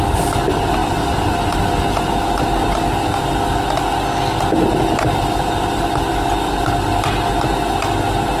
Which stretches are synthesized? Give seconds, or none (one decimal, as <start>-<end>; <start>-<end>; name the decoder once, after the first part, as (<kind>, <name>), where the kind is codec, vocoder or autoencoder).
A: none